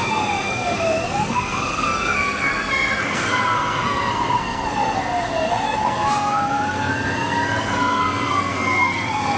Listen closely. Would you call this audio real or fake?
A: fake